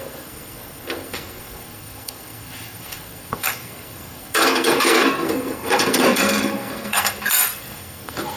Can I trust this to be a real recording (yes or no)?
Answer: no